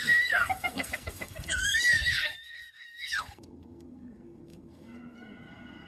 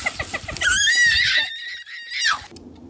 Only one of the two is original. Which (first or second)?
second